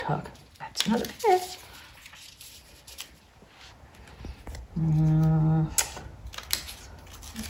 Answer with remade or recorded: recorded